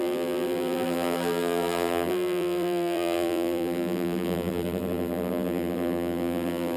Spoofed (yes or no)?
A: yes